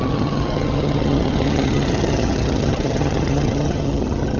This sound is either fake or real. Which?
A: fake